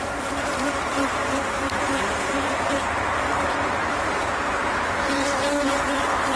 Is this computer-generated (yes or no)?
yes